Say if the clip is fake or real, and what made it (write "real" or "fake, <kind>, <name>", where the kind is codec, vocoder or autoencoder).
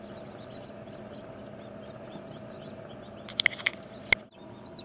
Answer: real